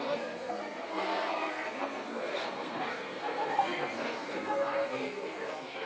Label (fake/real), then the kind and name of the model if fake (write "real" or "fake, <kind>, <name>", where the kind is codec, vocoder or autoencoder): fake, codec, SNAC